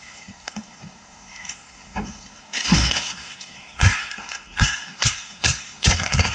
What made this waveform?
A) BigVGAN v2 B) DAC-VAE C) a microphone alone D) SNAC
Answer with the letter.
D